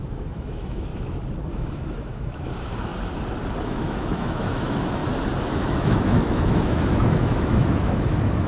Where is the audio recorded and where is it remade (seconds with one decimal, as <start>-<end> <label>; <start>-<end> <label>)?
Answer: 0.0-0.9 remade; 0.9-1.5 recorded; 1.5-2.9 remade; 2.9-3.6 recorded; 3.6-5.0 remade; 5.0-5.6 recorded; 5.6-8.5 remade